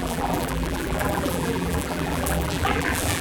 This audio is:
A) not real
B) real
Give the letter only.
A